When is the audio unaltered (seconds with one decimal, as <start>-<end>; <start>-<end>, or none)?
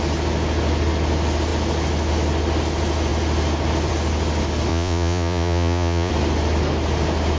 0.0-4.7; 6.1-7.4